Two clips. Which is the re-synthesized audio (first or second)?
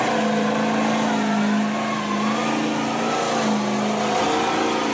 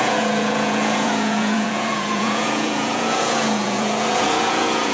second